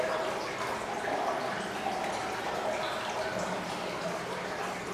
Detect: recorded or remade recorded